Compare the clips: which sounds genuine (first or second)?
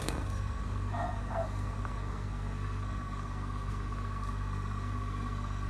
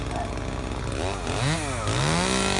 second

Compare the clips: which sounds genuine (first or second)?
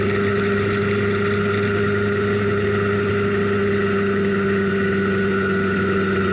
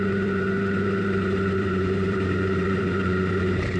first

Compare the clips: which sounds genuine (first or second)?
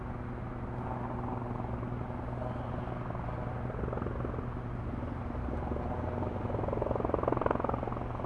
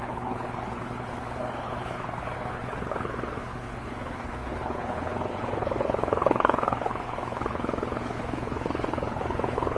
first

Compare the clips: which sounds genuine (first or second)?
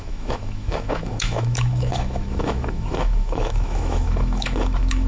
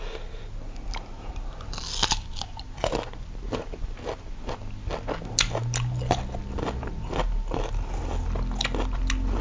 second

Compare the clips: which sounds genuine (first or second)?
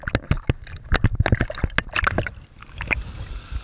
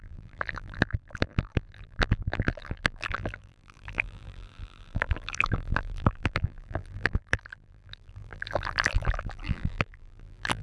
first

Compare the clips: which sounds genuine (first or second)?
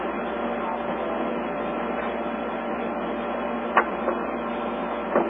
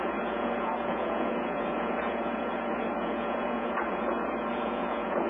first